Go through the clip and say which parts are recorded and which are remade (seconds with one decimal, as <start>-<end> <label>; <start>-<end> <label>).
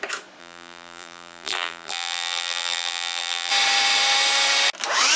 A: 0.0-0.4 recorded; 0.4-3.5 remade; 3.5-5.2 recorded